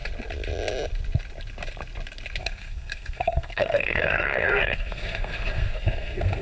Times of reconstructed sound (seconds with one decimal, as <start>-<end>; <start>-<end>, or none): 2.4-6.4

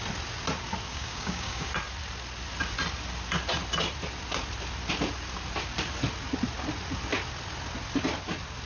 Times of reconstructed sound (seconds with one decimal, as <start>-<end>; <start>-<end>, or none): 0.9-1.7

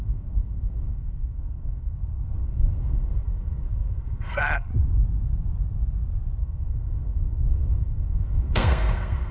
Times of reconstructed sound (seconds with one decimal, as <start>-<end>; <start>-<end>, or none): 0.0-4.7; 6.4-9.3